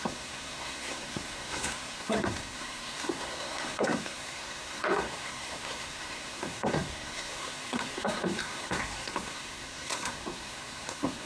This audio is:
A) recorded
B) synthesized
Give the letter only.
B